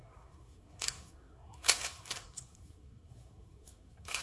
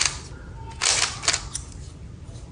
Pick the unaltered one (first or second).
second